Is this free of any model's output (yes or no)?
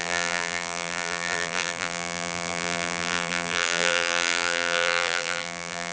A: no